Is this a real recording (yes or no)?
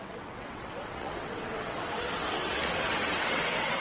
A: no